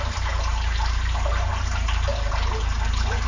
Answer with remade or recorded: recorded